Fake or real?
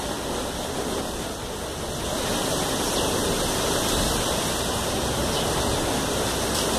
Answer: real